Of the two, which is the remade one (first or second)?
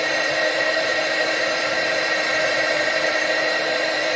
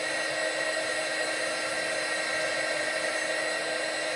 first